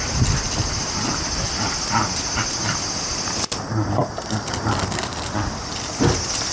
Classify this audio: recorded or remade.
recorded